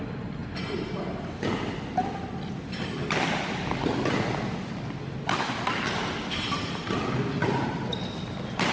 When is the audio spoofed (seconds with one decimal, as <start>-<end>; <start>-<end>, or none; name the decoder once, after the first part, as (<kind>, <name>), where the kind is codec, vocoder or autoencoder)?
none